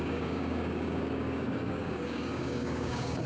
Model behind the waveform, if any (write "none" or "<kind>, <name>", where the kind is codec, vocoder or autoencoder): codec, DAC